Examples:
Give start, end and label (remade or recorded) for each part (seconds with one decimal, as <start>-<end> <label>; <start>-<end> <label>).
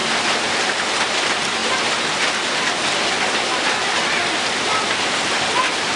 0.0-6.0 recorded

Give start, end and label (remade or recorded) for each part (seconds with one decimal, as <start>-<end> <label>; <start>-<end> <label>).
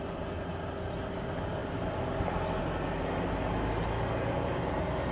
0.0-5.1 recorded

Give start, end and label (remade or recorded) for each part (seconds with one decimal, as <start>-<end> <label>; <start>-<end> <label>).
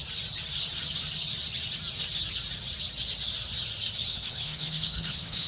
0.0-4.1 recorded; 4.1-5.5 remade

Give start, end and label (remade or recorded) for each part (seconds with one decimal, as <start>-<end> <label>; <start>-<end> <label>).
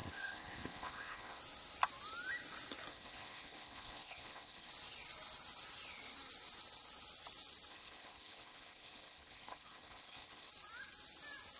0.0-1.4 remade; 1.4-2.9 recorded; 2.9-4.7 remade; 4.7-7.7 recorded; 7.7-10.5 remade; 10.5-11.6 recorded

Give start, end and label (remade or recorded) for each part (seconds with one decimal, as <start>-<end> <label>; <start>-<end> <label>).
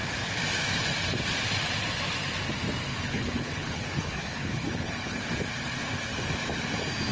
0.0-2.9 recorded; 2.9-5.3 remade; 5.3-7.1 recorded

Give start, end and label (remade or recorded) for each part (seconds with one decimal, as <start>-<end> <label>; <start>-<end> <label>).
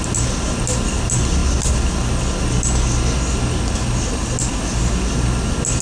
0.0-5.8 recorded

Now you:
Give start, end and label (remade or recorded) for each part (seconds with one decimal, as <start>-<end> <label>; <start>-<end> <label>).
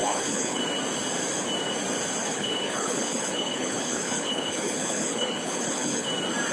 0.0-0.6 remade; 0.6-2.2 recorded; 2.2-6.1 remade; 6.1-6.5 recorded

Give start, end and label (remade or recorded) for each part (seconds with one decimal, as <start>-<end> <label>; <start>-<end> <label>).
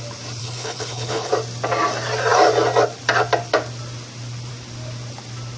0.0-0.4 recorded; 0.4-1.3 remade; 1.3-5.6 recorded